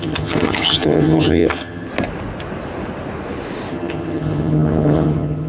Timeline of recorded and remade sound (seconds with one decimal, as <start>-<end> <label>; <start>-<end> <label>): 0.0-1.9 remade; 1.9-3.7 recorded; 3.7-5.5 remade